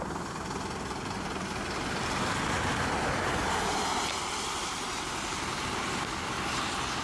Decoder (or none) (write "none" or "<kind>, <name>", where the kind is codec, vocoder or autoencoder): none